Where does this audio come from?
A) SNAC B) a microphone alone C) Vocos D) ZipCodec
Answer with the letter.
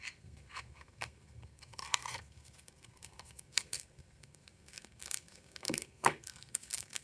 A